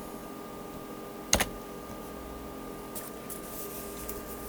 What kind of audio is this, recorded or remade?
recorded